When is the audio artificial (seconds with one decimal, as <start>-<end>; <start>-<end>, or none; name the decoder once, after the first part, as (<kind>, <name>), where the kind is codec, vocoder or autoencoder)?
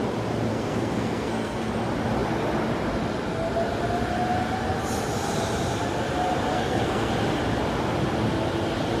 0.5-1.7 (codec, SNAC); 6.5-7.1